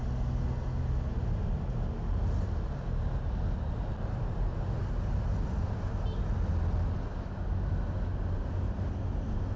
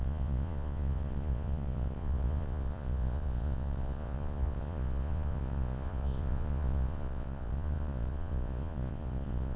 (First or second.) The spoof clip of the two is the second